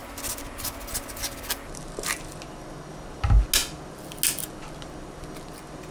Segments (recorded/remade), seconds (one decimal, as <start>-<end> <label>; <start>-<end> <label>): 0.0-5.9 recorded